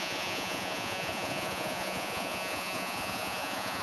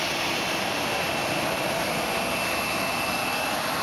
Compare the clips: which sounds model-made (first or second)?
first